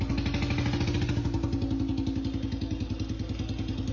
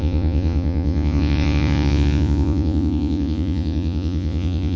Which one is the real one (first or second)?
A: first